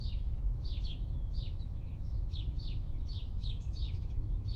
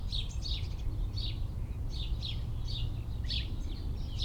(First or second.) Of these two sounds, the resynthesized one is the first